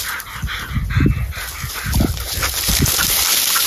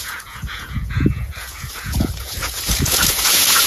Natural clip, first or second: first